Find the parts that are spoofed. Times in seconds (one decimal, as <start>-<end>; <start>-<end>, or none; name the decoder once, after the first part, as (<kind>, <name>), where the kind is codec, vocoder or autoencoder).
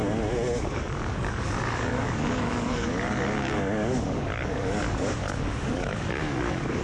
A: 0.7-6.8 (codec, DAC)